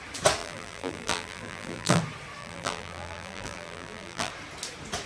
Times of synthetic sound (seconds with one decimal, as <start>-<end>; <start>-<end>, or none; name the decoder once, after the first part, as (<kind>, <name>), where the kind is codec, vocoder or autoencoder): 0.4-2.0 (vocoder, BigVGAN v2); 2.4-4.3